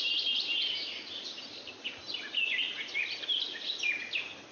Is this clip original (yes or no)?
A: yes